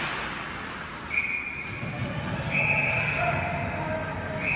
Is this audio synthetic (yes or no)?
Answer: no